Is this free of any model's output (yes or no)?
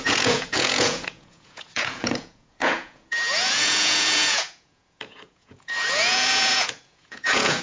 no